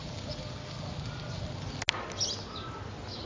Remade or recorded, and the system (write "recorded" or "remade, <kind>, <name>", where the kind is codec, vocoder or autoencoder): recorded